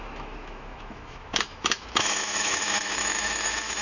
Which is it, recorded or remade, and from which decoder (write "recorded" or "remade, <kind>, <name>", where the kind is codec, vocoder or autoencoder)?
remade, autoencoder, DAC-VAE